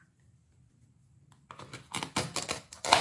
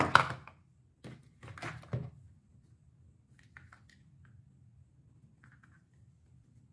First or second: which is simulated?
first